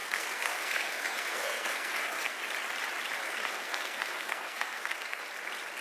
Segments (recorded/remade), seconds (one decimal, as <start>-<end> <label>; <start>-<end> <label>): 0.0-2.4 remade; 2.4-3.2 recorded; 3.2-5.2 remade; 5.2-5.8 recorded